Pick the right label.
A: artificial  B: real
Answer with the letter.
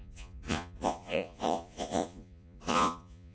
A